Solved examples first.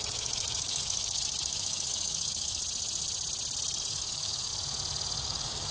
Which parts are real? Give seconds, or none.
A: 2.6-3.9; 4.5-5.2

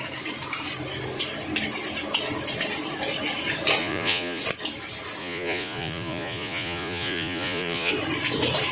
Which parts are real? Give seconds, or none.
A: 0.0-3.8; 4.4-5.2; 7.9-8.7

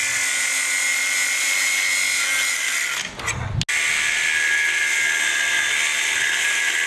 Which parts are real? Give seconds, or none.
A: 0.0-6.9

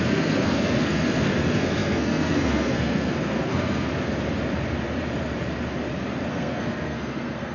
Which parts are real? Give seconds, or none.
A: 3.9-6.3

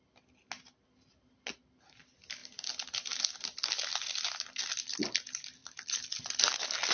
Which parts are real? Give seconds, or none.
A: 0.0-6.9

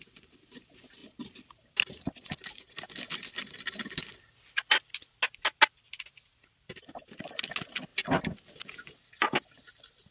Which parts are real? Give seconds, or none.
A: 0.0-10.1

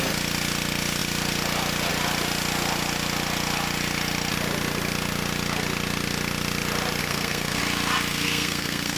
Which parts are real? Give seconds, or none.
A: 0.0-7.0; 7.6-8.1

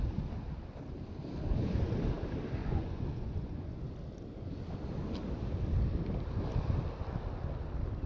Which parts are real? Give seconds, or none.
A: 0.0-2.6; 3.9-8.1